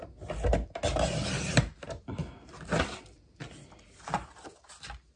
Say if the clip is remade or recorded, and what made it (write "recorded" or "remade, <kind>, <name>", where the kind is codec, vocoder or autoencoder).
recorded